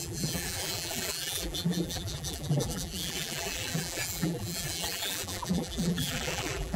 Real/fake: fake